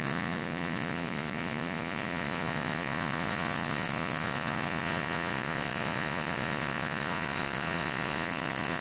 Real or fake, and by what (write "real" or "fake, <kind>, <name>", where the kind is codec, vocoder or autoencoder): fake, vocoder, Vocos